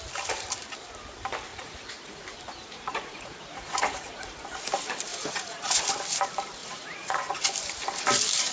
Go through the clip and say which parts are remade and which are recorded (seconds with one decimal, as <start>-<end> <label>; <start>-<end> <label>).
0.0-1.5 recorded; 1.5-2.2 remade; 2.2-2.6 recorded; 2.6-4.5 remade; 4.5-5.1 recorded; 5.1-5.8 remade; 5.8-6.6 recorded; 6.6-7.4 remade; 7.4-8.5 recorded